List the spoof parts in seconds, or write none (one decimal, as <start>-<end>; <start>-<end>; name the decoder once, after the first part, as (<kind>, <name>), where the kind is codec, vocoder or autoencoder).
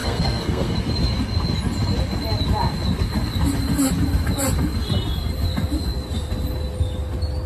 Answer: 0.0-0.8 (codec, SNAC)